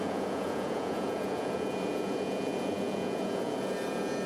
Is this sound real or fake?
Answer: fake